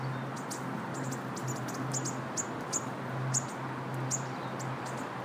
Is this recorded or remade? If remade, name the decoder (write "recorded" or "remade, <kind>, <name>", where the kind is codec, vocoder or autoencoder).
recorded